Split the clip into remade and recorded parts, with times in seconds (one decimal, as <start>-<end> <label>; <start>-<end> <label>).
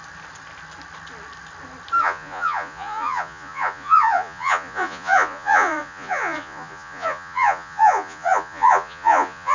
0.0-2.0 recorded; 2.0-9.5 remade